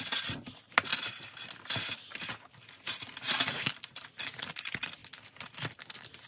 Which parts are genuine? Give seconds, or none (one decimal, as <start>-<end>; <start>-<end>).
0.0-6.3